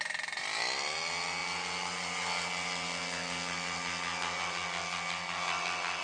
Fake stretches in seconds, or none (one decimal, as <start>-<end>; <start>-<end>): none